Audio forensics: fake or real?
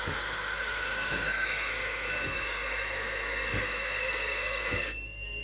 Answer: fake